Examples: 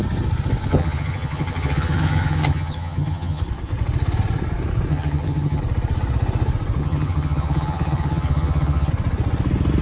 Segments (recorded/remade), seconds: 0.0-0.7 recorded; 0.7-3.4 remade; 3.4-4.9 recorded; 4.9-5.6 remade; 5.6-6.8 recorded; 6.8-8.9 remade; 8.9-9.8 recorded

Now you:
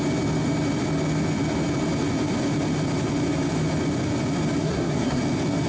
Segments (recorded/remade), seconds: 0.0-4.6 recorded; 4.6-5.2 remade; 5.2-5.7 recorded